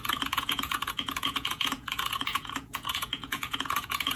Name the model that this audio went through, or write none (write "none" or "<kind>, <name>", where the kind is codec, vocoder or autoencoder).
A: vocoder, Vocos